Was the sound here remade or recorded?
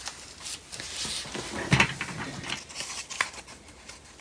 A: recorded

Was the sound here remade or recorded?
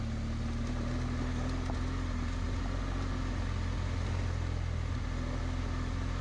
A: recorded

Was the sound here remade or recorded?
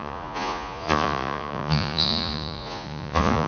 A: remade